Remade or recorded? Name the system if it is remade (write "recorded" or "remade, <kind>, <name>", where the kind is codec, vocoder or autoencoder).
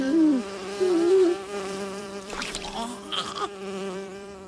remade, vocoder, BigVGAN v2